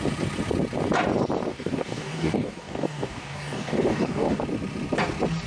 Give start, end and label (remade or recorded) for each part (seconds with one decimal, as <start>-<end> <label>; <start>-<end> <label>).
0.0-1.5 recorded; 1.5-4.4 remade; 4.4-5.5 recorded